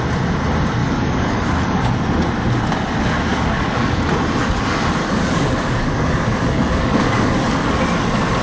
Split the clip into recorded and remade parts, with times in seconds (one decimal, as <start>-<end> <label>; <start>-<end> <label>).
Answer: 0.0-0.8 recorded; 0.8-1.9 remade; 1.9-3.3 recorded; 3.3-4.1 remade; 4.1-5.0 recorded; 5.0-7.8 remade; 7.8-8.4 recorded

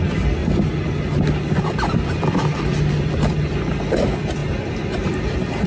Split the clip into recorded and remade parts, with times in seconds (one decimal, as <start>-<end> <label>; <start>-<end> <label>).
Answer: 0.0-0.4 recorded; 0.4-3.8 remade; 3.8-5.7 recorded

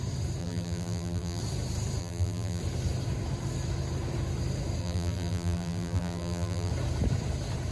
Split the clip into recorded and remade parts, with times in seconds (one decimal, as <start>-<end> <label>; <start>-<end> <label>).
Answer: 0.0-0.4 recorded; 0.4-1.4 remade; 1.4-2.0 recorded; 2.0-2.6 remade; 2.6-4.8 recorded; 4.8-6.7 remade; 6.7-7.7 recorded

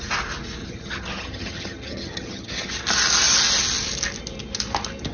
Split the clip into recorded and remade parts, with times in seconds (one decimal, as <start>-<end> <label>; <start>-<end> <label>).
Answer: 0.0-0.6 recorded; 0.6-2.7 remade; 2.7-5.1 recorded